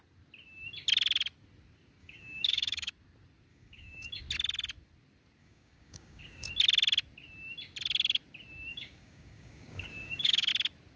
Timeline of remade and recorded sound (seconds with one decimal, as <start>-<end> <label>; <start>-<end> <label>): 0.0-2.0 recorded; 2.0-2.9 remade; 2.9-3.5 recorded; 3.5-4.2 remade; 4.2-5.4 recorded; 5.4-6.5 remade; 6.5-8.7 recorded; 8.7-10.5 remade; 10.5-11.0 recorded